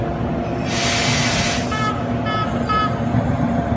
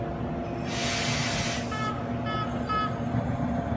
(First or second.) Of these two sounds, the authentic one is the second